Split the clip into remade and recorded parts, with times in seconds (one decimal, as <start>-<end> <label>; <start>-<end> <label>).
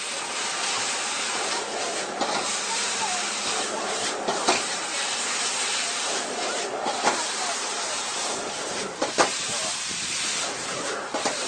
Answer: 0.0-11.5 remade